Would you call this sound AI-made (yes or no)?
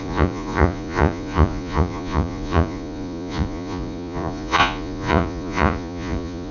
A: yes